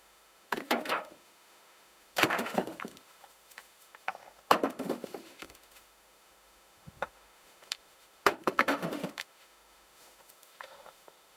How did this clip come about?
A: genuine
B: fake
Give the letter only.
B